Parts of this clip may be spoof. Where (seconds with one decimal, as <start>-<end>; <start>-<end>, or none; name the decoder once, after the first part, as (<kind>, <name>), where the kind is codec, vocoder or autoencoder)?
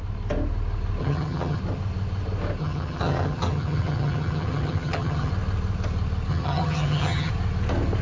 1.0-1.6 (vocoder, HiFi-GAN); 2.6-5.3; 6.3-7.3